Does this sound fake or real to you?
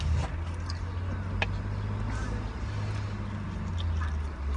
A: real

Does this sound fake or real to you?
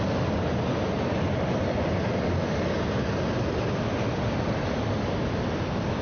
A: real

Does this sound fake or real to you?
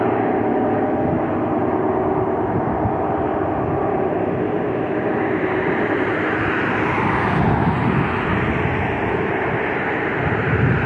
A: real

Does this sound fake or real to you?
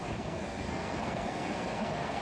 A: fake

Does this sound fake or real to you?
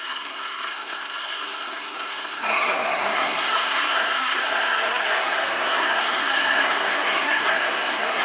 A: fake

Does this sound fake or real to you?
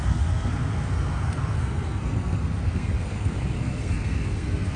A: fake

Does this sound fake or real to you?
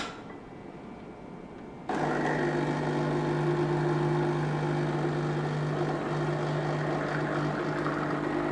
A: real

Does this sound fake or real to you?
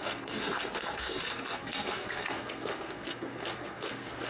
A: fake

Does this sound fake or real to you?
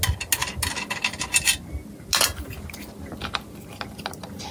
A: real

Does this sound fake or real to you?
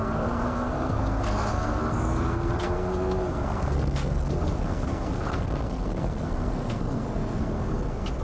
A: fake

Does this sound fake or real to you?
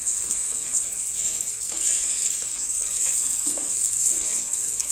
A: fake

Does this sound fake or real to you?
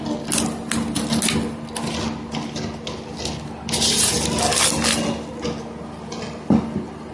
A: real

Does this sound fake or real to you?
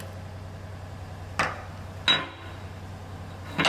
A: real